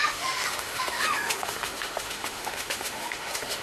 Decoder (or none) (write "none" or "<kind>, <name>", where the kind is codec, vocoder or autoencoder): autoencoder, DAC-VAE